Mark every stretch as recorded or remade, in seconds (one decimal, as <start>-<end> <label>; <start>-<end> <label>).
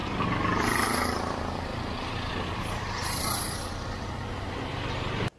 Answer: 0.0-0.6 recorded; 0.6-1.7 remade; 1.7-2.3 recorded; 2.3-5.4 remade